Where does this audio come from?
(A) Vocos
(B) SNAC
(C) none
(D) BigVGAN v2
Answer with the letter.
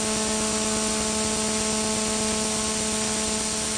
C